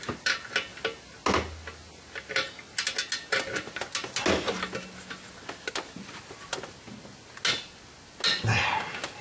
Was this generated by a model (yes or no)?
no